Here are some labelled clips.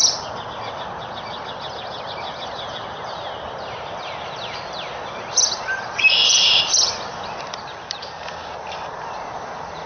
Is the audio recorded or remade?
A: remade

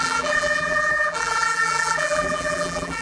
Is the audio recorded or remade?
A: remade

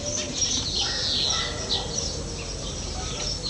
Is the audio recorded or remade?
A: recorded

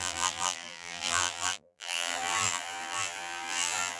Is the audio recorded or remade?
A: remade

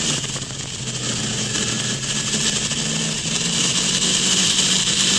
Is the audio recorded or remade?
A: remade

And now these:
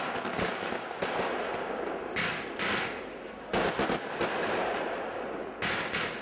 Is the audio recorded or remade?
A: recorded